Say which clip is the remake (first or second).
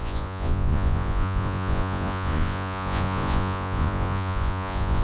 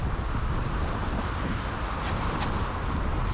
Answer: first